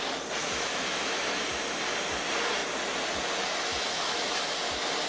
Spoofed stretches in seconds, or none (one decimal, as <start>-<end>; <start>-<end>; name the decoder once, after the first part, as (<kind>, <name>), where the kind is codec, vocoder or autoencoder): 0.4-1.2 (autoencoder, DAC-VAE); 3.7-4.4